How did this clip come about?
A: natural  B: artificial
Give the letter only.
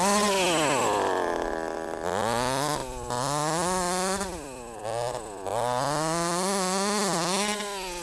A